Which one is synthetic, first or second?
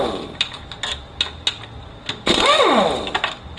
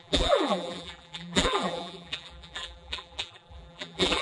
second